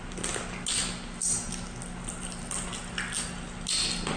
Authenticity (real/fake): real